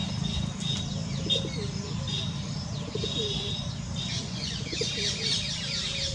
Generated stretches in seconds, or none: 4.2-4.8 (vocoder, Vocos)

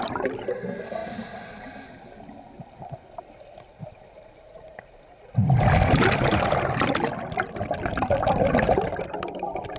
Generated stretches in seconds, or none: none

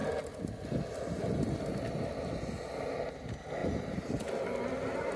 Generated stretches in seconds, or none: 3.6-4.2 (vocoder, BigVGAN v2)

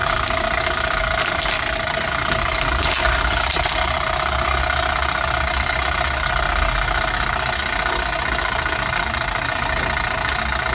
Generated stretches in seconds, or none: 0.0-2.1 (vocoder, BigVGAN v2)

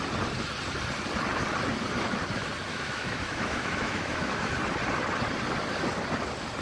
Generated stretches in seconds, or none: 2.7-4.5 (autoencoder, DAC-VAE)